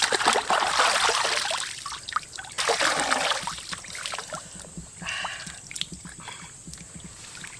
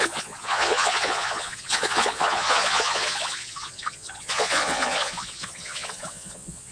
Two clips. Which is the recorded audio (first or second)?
first